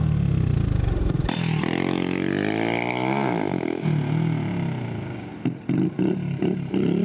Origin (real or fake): real